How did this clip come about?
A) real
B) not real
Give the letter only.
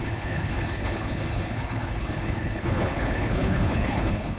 B